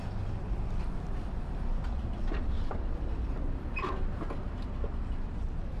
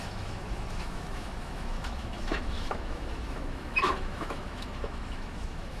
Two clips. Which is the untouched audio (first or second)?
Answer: first